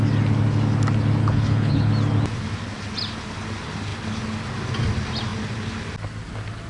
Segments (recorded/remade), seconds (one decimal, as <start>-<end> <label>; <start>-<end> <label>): 0.0-1.2 recorded; 1.2-1.9 remade; 1.9-6.7 recorded